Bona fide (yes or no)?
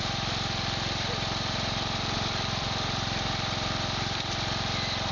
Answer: no